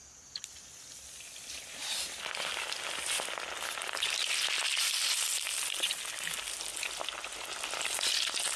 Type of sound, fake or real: real